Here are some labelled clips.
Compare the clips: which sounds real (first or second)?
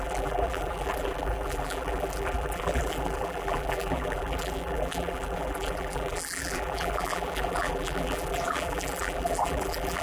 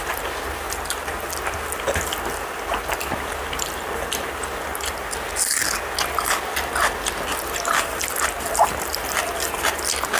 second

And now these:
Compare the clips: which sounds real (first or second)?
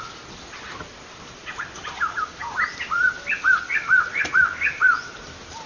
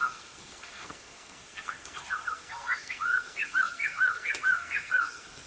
first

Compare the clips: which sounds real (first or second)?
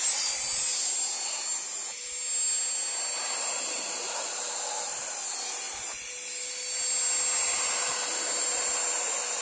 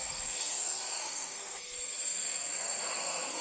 first